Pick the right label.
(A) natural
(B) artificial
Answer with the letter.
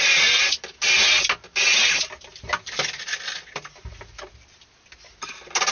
A